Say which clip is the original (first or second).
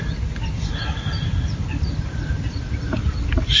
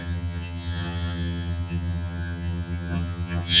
first